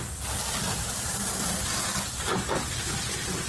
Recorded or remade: recorded